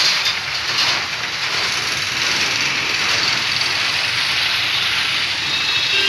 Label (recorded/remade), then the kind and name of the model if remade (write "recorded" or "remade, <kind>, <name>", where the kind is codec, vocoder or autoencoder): recorded